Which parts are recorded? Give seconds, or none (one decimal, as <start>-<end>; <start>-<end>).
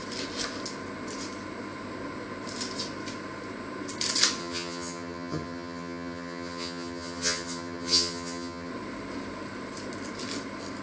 0.0-4.4; 8.7-10.8